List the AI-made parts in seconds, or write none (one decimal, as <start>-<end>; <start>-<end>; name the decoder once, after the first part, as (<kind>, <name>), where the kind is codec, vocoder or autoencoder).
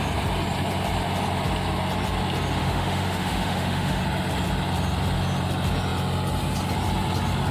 2.6-4.0 (autoencoder, DAC-VAE)